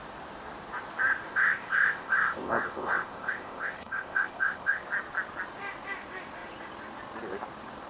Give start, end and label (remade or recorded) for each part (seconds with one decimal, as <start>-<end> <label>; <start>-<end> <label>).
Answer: 0.0-1.3 recorded; 1.3-4.8 remade; 4.8-7.9 recorded